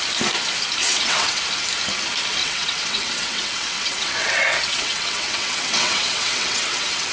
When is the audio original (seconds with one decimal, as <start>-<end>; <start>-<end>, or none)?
0.0-0.8; 1.4-2.4